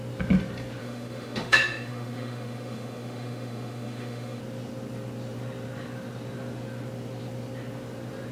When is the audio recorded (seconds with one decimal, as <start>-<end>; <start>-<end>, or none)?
0.0-0.8; 4.4-8.3